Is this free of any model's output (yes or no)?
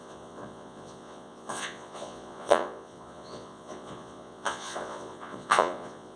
no